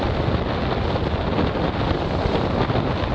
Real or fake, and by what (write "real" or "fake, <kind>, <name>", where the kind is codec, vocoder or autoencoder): real